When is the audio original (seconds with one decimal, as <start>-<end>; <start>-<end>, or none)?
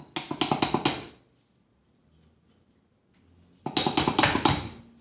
0.0-5.0